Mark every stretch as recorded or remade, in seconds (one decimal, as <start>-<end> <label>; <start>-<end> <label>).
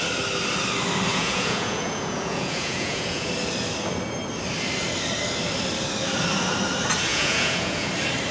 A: 0.0-1.1 recorded; 1.1-3.3 remade; 3.3-7.1 recorded; 7.1-7.9 remade; 7.9-8.3 recorded